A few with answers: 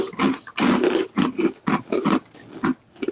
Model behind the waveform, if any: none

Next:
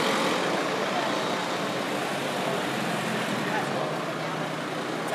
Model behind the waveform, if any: none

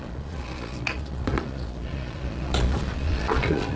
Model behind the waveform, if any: vocoder, Vocos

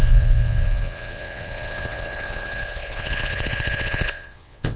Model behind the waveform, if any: vocoder, WaveNeXt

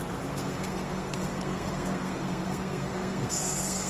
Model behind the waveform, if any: codec, SNAC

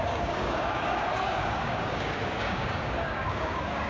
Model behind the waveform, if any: codec, DAC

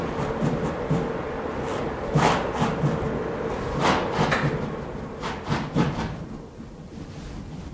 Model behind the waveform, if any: none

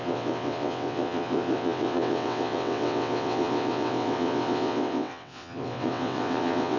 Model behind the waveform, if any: vocoder, WaveNeXt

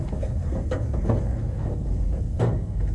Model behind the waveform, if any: codec, SNAC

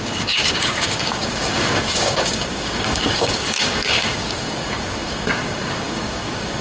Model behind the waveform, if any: codec, DAC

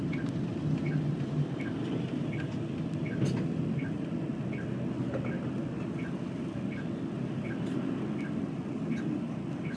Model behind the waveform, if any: none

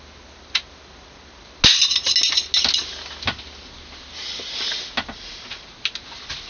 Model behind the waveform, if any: none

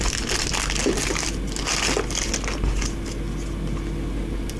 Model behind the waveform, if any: none